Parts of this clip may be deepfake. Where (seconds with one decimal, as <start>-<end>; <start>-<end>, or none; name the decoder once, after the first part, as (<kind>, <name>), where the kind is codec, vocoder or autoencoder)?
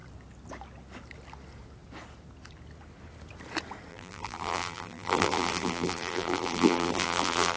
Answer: 3.9-7.6 (vocoder, BigVGAN v2)